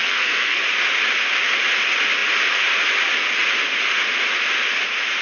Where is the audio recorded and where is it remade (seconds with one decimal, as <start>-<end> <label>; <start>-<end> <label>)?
0.0-0.6 remade; 0.6-5.2 recorded

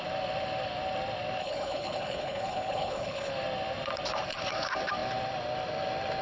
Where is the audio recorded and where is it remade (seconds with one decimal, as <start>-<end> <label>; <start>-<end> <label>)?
0.0-1.4 recorded; 1.4-3.3 remade; 3.3-6.2 recorded

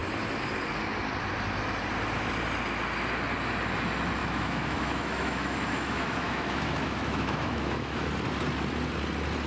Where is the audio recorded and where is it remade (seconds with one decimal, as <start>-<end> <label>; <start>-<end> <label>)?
0.0-4.2 recorded; 4.2-8.1 remade; 8.1-9.5 recorded

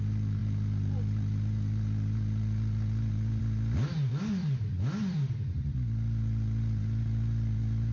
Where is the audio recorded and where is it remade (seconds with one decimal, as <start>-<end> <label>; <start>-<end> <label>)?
0.0-7.9 recorded

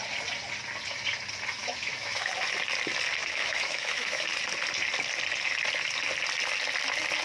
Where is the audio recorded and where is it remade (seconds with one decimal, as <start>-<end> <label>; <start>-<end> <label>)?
0.0-1.6 recorded; 1.6-2.3 remade; 2.3-3.2 recorded; 3.2-4.3 remade; 4.3-7.2 recorded

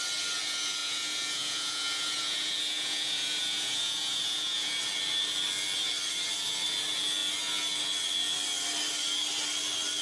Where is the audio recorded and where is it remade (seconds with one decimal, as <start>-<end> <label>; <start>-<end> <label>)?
0.0-0.8 recorded; 0.8-4.8 remade; 4.8-10.0 recorded

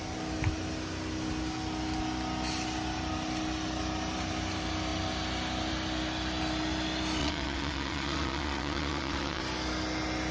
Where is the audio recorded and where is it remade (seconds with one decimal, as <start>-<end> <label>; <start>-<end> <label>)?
0.0-7.2 recorded; 7.2-9.4 remade; 9.4-10.3 recorded

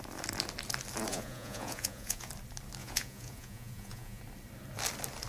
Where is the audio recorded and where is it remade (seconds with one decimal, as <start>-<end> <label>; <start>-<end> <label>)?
0.0-1.1 recorded; 1.1-2.3 remade; 2.3-2.8 recorded; 2.8-4.2 remade; 4.2-5.3 recorded